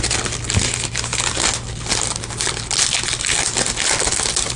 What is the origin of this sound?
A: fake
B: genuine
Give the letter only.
B